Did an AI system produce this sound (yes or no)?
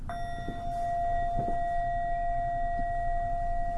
no